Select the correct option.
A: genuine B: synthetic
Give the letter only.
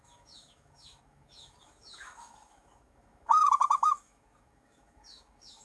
B